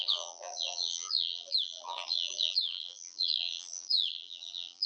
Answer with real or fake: fake